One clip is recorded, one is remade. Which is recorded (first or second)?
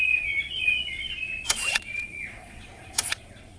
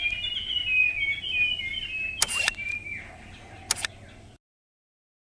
second